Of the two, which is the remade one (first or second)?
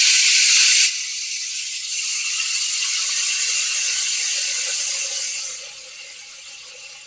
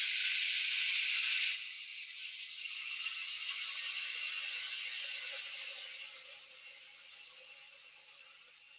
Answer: first